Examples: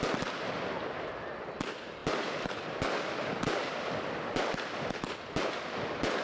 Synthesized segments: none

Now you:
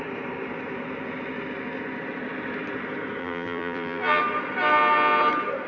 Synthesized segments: 3.2-4.2

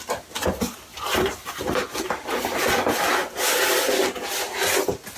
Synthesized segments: 0.9-1.5

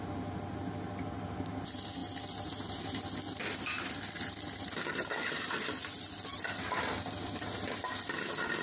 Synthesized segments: none

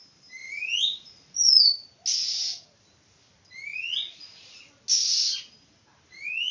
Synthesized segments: 0.4-1.6; 3.7-4.7

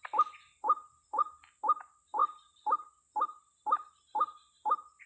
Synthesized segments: none

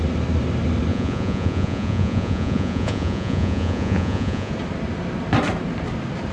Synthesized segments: 0.9-4.5

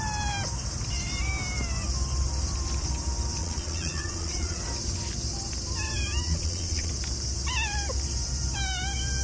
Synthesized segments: 3.4-4.6; 6.2-6.9